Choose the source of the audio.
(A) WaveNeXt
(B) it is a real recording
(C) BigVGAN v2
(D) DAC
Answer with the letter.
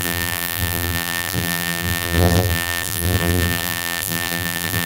C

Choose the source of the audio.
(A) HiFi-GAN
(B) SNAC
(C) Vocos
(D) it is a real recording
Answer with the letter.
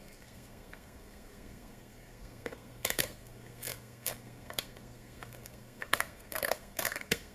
B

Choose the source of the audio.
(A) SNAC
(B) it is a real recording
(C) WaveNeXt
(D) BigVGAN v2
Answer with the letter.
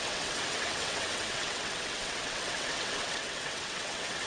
C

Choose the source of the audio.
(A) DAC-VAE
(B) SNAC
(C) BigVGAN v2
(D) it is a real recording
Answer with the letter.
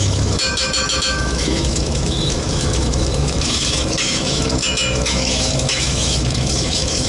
A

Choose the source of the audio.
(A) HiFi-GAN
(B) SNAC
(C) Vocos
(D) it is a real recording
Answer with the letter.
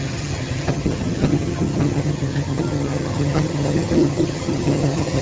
A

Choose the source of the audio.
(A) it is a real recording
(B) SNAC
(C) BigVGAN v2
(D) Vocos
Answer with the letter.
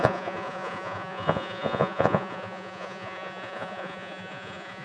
D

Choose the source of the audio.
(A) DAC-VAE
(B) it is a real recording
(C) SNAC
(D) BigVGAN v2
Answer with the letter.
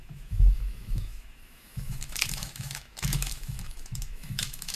A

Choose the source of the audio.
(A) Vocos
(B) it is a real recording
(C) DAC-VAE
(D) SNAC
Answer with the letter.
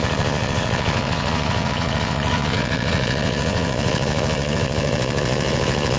A